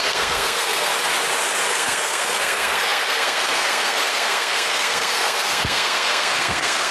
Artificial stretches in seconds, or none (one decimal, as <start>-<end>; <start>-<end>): 0.0-0.9; 1.7-6.9